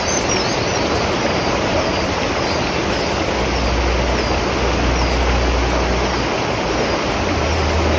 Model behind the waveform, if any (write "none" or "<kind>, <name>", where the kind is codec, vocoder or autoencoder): none